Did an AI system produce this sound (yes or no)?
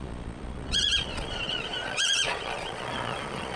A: yes